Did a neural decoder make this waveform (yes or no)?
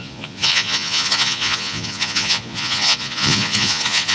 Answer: yes